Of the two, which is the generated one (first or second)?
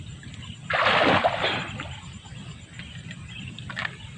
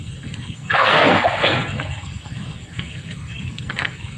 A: second